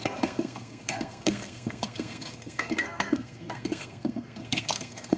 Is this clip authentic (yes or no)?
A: no